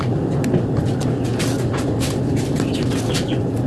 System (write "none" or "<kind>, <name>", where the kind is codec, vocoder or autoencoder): none